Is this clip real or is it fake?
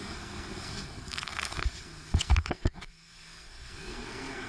fake